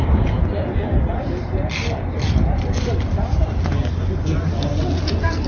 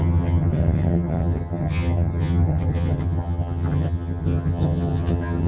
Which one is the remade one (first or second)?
second